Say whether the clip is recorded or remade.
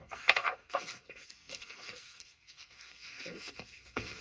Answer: remade